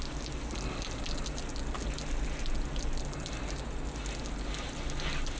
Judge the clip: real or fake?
real